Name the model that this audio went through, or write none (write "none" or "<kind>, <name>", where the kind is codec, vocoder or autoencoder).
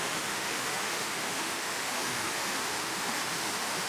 autoencoder, DAC-VAE